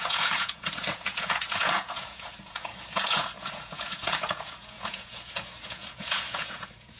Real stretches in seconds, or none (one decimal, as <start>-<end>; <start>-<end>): none